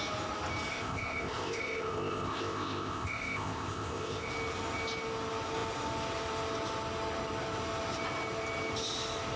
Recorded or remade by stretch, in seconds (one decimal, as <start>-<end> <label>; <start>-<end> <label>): 0.0-0.7 recorded; 0.7-4.3 remade; 4.3-9.4 recorded